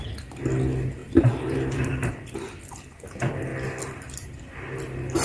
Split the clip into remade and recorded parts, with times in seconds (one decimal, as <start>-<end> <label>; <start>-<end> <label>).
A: 0.0-1.0 recorded; 1.0-2.1 remade; 2.1-5.2 recorded